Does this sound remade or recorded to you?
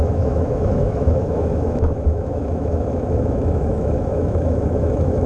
remade